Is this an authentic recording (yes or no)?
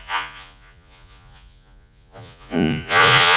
no